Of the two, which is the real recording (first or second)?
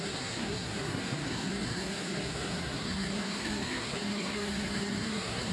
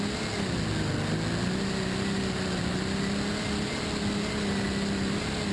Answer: second